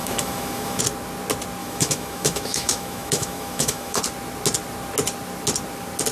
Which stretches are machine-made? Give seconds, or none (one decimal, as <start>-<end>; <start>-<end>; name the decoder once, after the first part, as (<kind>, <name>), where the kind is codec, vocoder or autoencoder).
0.0-0.8 (autoencoder, DAC-VAE); 1.6-4.0